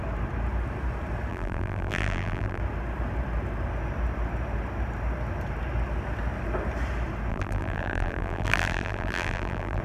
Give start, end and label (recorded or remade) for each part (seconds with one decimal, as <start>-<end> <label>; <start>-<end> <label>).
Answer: 0.0-1.3 recorded; 1.3-2.6 remade; 2.6-7.3 recorded; 7.3-9.8 remade

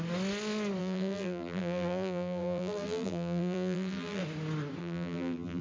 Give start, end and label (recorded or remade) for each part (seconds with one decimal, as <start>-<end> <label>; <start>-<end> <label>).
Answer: 0.0-0.8 recorded; 0.8-4.2 remade; 4.2-4.8 recorded; 4.8-5.6 remade

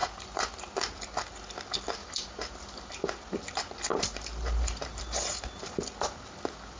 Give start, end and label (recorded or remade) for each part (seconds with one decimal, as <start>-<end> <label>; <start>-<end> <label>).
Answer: 0.0-0.5 remade; 0.5-2.0 recorded; 2.0-2.9 remade; 2.9-3.9 recorded; 3.9-5.0 remade; 5.0-6.8 recorded

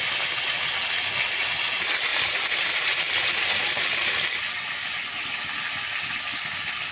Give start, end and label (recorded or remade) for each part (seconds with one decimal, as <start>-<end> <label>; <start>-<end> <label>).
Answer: 0.0-2.1 recorded; 2.1-4.1 remade; 4.1-6.9 recorded

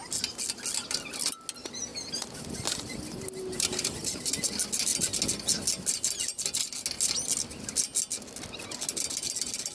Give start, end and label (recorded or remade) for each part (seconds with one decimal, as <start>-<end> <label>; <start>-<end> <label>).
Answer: 0.0-3.5 recorded; 3.5-4.2 remade; 4.2-9.7 recorded